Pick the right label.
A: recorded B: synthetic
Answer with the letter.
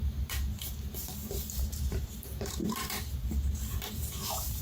B